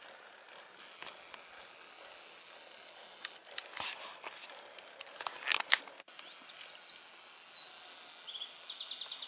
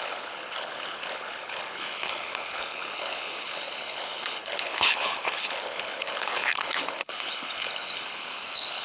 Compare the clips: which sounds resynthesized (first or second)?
second